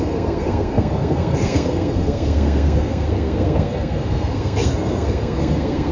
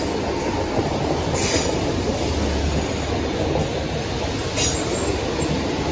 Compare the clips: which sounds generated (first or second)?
first